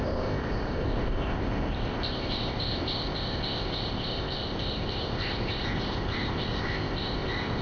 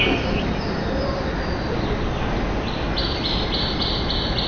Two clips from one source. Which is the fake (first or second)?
first